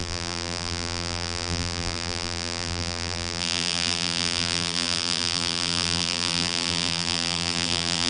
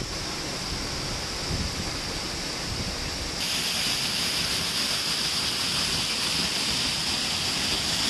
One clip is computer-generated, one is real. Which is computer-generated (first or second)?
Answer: first